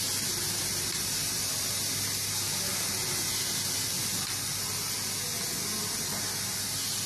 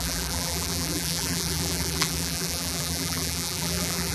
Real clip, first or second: first